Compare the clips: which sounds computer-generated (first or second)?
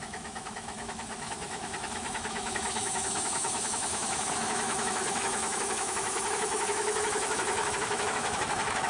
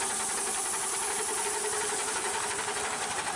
first